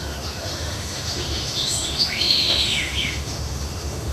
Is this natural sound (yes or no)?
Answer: no